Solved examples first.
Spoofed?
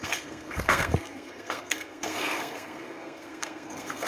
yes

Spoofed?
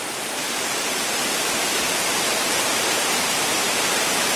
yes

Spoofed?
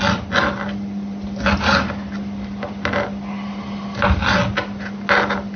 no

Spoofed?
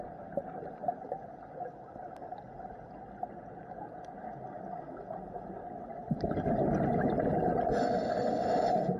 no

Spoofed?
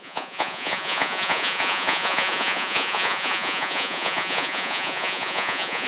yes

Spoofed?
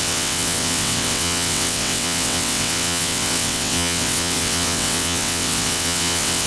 yes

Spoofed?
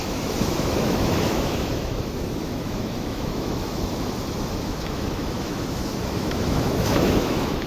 yes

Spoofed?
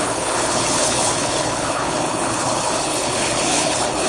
yes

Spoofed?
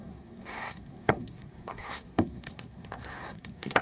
yes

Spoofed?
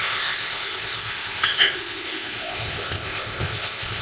yes